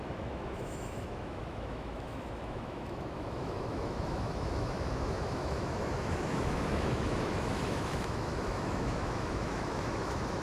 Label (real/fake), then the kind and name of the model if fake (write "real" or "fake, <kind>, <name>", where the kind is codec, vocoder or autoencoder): fake, autoencoder, DAC-VAE